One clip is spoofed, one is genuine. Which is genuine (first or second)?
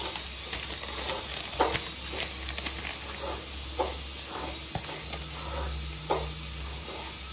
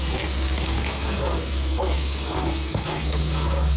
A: first